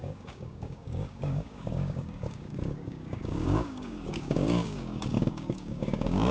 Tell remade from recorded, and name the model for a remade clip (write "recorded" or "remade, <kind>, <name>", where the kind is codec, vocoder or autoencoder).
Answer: remade, codec, DAC